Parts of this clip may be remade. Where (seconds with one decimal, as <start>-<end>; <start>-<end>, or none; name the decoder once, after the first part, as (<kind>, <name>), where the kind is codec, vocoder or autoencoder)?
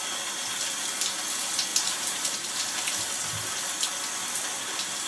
1.7-3.0 (vocoder, BigVGAN v2)